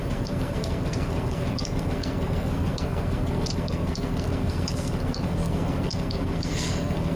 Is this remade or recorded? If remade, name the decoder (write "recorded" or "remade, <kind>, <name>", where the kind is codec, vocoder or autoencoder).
remade, codec, SNAC